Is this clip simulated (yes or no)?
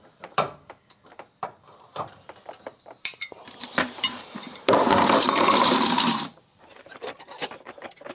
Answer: yes